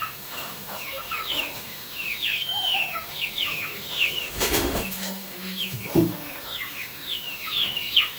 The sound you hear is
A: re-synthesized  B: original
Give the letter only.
A